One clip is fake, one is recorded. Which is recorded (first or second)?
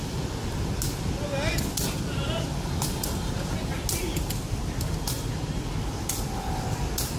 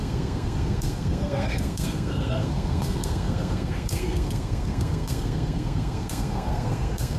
first